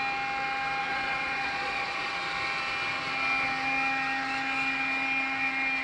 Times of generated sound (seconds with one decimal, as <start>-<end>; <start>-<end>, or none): 0.8-2.1